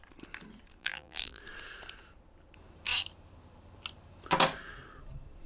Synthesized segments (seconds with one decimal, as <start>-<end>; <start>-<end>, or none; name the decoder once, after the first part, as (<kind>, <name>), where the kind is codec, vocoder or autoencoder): 0.8-1.4 (vocoder, BigVGAN v2)